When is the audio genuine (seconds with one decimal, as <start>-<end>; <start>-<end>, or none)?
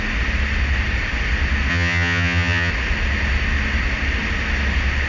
0.0-1.7; 2.7-5.1